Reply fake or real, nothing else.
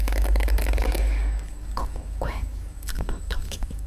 fake